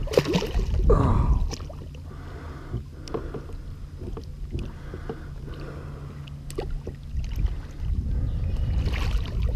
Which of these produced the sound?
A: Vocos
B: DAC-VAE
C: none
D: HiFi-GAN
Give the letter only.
C